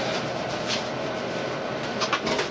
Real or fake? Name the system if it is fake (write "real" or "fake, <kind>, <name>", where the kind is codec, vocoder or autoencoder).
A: real